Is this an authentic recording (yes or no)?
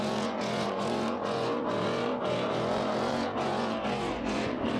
no